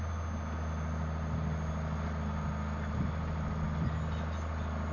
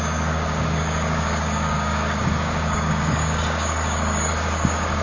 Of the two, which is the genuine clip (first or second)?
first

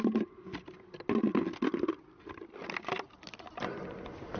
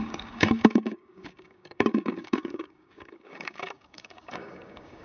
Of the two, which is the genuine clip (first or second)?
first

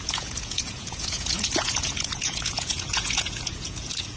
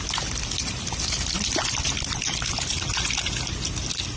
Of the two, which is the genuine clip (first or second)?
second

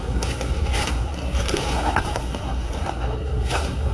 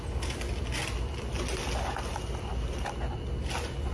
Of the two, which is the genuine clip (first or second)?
second